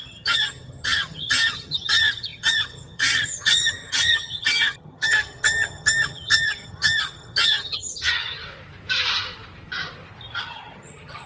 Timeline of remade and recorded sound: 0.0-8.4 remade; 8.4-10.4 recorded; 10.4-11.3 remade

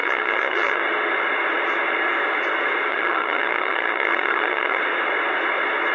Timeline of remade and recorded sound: 0.0-0.8 remade; 0.8-2.9 recorded; 2.9-4.8 remade; 4.8-5.9 recorded

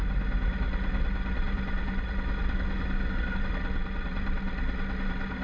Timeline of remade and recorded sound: 0.0-5.4 recorded

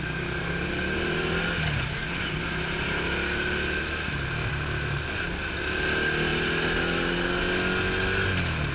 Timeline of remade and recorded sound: 0.0-8.7 recorded